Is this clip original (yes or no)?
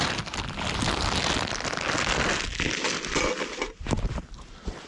yes